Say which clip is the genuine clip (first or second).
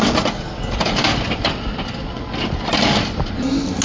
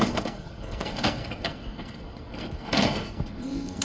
first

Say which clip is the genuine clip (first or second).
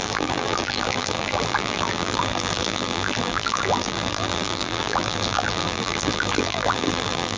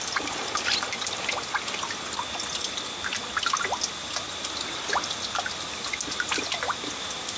second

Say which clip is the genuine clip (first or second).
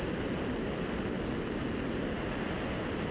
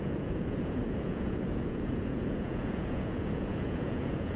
first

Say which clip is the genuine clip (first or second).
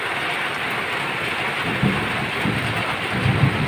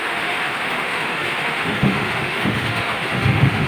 first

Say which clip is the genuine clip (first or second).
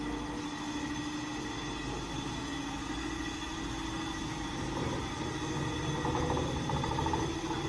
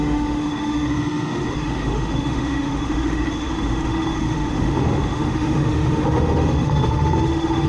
first